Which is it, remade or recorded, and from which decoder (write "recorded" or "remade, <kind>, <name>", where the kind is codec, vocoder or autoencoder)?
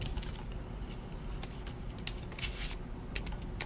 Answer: recorded